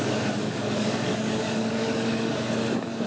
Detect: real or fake fake